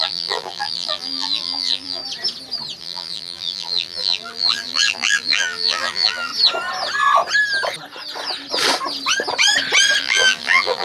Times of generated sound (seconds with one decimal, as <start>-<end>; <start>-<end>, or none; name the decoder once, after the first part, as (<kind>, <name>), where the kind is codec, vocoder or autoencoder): 0.0-2.0 (vocoder, BigVGAN v2); 2.8-6.3; 10.0-10.8

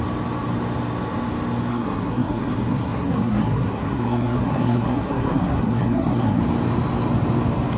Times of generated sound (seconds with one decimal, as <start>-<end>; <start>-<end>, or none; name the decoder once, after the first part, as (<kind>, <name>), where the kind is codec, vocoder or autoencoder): 1.7-6.4 (codec, SNAC)